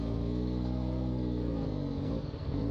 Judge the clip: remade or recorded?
remade